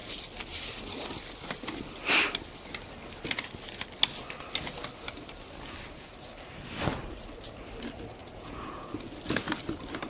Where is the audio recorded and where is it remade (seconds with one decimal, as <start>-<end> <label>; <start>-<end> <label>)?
0.0-8.2 recorded; 8.2-8.9 remade; 8.9-10.1 recorded